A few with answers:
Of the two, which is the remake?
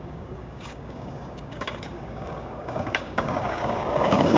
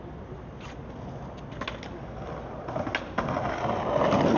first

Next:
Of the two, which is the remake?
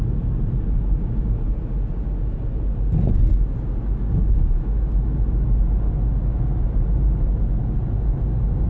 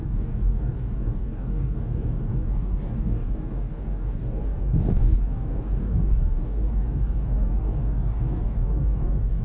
second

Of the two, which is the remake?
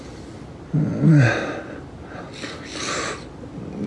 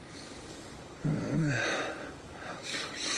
second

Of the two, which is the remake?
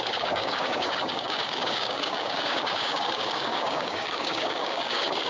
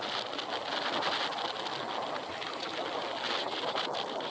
first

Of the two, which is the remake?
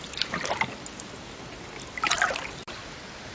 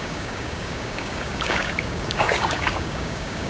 second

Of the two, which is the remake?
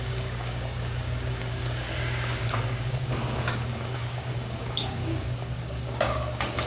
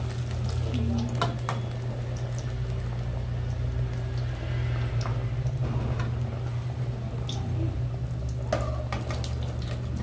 first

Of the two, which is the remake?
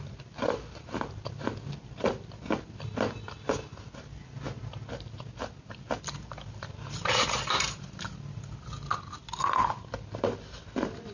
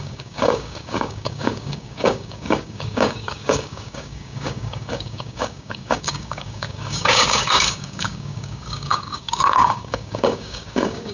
second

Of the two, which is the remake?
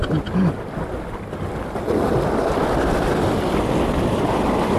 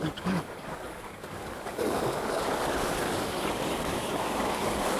second